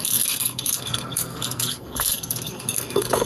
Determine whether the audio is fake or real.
fake